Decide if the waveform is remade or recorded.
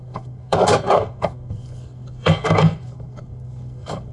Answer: remade